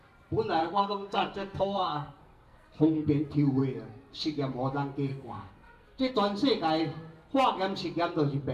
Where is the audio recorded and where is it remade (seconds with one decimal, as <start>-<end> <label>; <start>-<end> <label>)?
0.0-0.6 recorded; 0.6-3.1 remade; 3.1-5.1 recorded; 5.1-6.1 remade; 6.1-8.5 recorded